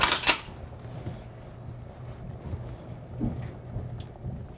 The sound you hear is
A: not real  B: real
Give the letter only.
B